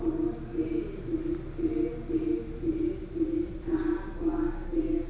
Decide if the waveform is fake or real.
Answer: real